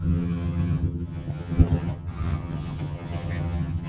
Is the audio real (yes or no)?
no